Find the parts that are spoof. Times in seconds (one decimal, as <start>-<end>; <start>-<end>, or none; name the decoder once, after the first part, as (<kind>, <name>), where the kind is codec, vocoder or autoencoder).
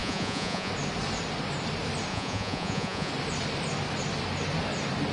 0.0-0.7 (vocoder, Vocos); 2.1-3.1